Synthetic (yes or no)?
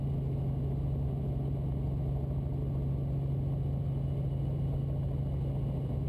no